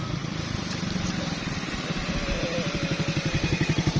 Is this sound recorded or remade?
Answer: recorded